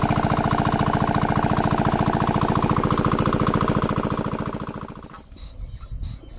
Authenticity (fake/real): real